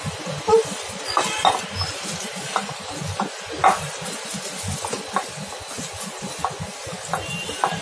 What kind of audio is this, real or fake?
real